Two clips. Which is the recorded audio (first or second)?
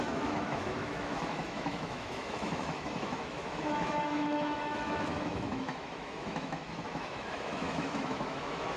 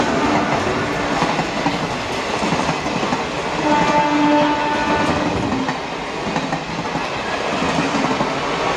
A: second